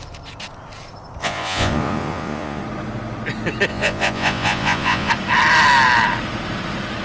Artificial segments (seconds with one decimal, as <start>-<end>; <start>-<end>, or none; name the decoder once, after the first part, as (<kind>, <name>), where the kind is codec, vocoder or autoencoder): 1.2-2.6 (vocoder, Vocos); 3.7-5.1